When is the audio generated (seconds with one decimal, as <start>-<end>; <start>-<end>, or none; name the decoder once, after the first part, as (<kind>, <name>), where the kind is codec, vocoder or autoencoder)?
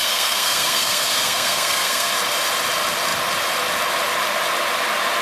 0.0-2.1 (codec, SNAC)